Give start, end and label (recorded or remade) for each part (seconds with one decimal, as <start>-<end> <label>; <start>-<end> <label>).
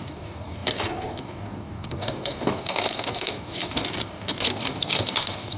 0.0-5.6 remade